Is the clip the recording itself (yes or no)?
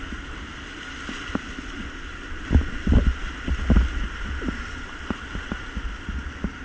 yes